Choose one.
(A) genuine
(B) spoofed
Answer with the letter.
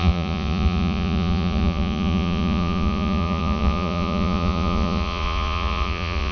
B